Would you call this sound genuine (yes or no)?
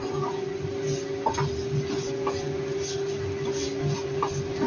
yes